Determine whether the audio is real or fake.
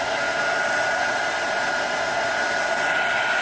real